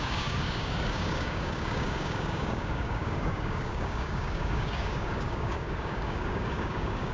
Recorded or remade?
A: remade